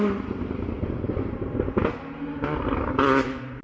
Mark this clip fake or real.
real